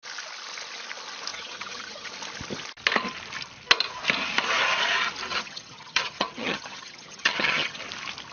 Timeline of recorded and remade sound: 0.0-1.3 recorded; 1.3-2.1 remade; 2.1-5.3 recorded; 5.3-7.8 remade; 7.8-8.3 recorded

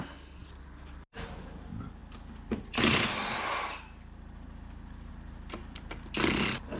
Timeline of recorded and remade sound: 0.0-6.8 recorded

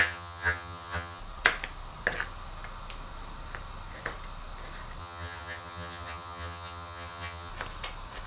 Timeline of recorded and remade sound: 0.0-1.2 remade; 1.2-5.0 recorded; 5.0-7.5 remade; 7.5-8.3 recorded

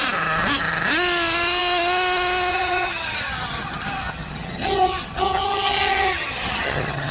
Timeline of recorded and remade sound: 0.0-2.5 recorded; 2.5-7.1 remade